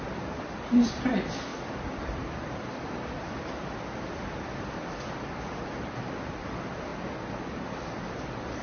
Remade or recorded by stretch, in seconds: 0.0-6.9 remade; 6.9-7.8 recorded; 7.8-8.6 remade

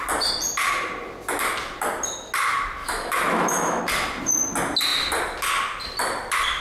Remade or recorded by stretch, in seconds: 0.0-2.8 recorded; 2.8-3.8 remade; 3.8-6.6 recorded

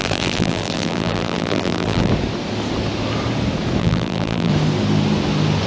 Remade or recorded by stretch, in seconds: 0.0-2.1 remade; 2.1-3.8 recorded; 3.8-4.5 remade; 4.5-5.7 recorded

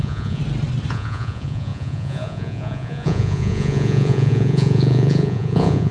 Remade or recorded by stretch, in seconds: 0.0-0.4 remade; 0.4-0.9 recorded; 0.9-5.9 remade

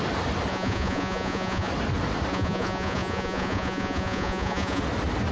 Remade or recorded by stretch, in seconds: 0.0-0.5 recorded; 0.5-1.7 remade; 1.7-2.3 recorded; 2.3-4.8 remade; 4.8-5.3 recorded

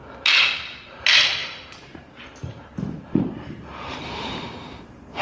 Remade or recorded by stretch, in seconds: 0.0-1.4 recorded; 1.4-4.5 remade; 4.5-5.2 recorded

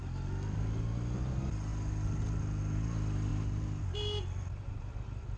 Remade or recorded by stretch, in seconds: 0.0-5.4 recorded

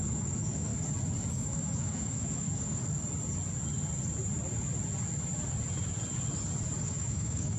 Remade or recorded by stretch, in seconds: 0.0-0.7 remade; 0.7-1.3 recorded; 1.3-2.8 remade; 2.8-6.8 recorded; 6.8-7.6 remade